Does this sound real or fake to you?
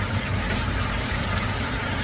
fake